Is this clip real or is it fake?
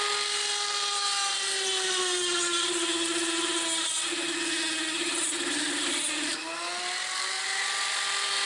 real